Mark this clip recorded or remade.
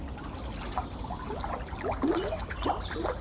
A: recorded